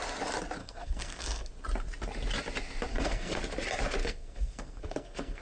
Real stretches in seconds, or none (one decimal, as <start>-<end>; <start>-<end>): 0.0-0.6; 1.5-2.9; 3.4-4.0